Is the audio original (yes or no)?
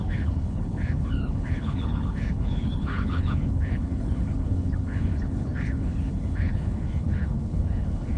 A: no